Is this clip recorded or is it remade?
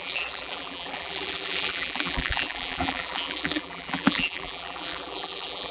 remade